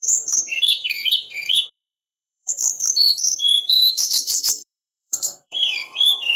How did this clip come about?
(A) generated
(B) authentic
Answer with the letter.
A